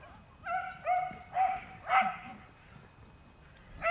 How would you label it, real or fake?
real